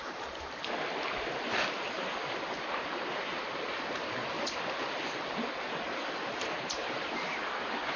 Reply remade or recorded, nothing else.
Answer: recorded